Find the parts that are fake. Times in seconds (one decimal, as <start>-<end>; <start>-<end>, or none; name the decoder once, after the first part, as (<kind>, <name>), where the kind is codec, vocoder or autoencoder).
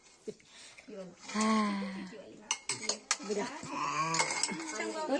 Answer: none